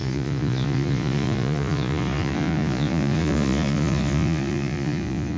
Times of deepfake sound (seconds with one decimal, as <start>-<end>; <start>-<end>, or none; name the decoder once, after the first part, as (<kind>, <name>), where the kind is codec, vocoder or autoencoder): 0.0-5.4 (vocoder, Vocos)